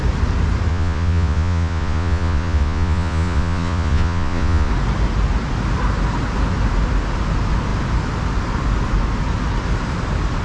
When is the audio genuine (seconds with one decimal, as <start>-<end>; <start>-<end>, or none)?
0.0-0.7; 4.7-10.4